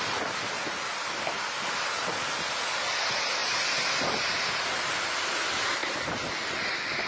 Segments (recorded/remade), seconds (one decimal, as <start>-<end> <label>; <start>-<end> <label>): 0.0-7.1 recorded

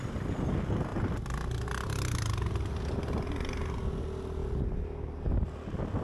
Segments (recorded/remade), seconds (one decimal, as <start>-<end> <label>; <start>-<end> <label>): 0.0-6.0 recorded

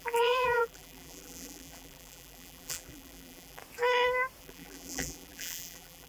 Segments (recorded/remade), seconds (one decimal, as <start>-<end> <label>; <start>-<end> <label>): 0.0-3.6 remade; 3.6-4.4 recorded; 4.4-6.1 remade

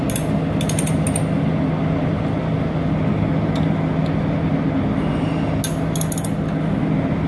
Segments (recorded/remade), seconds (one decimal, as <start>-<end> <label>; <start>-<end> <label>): 0.0-7.3 recorded

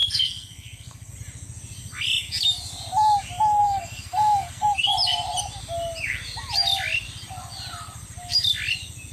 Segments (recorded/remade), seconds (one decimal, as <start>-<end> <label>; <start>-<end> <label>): 0.0-1.1 remade; 1.1-3.6 recorded; 3.6-4.9 remade; 4.9-9.1 recorded